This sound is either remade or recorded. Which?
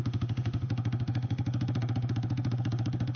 remade